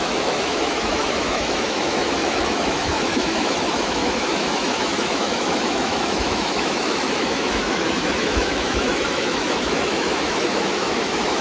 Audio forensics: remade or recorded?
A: remade